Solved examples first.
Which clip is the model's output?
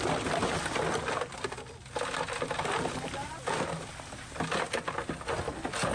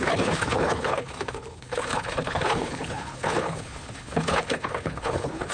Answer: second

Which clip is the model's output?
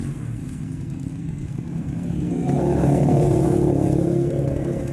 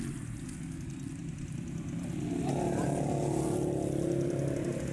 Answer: first